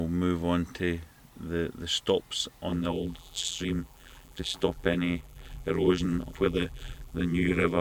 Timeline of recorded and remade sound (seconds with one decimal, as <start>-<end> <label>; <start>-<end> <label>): 0.0-2.7 recorded; 2.7-7.8 remade